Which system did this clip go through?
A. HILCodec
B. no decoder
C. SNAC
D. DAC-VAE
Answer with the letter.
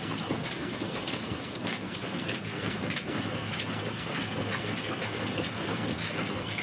C